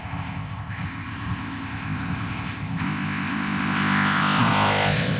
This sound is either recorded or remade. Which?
remade